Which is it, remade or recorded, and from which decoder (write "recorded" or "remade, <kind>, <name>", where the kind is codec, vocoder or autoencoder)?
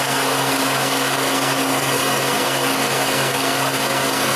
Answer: remade, codec, SNAC